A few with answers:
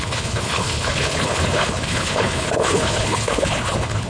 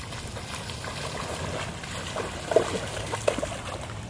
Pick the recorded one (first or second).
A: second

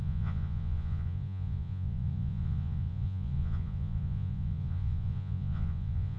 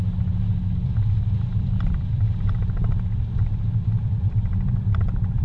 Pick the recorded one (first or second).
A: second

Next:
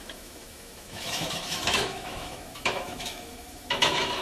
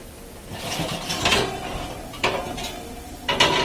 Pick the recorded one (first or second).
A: second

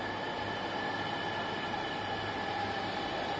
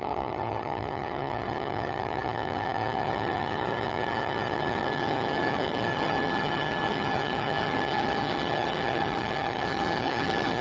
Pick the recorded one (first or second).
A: first